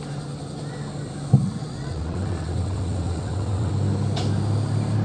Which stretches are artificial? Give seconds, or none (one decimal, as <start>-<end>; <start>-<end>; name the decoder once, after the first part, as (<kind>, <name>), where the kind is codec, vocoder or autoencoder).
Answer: 1.4-3.7 (vocoder, WaveNeXt)